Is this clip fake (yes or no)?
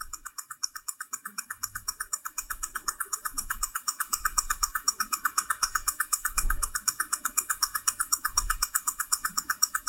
yes